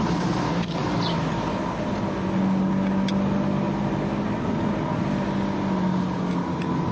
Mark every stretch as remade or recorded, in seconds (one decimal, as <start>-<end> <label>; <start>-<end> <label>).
0.0-6.9 recorded